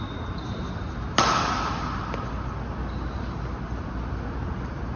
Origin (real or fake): real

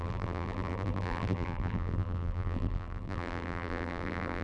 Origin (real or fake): fake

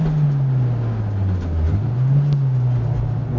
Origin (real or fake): real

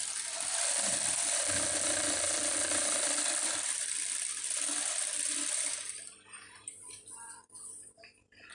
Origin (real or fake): fake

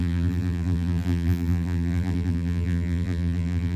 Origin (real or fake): fake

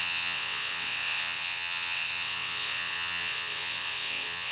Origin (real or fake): fake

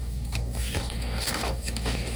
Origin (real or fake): fake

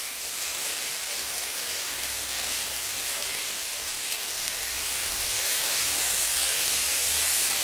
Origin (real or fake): fake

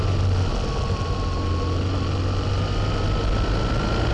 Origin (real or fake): real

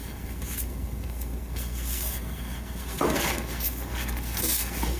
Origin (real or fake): fake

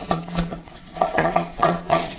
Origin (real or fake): fake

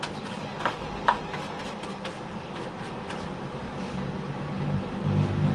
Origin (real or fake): real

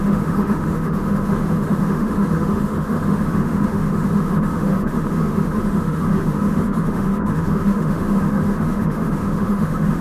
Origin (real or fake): fake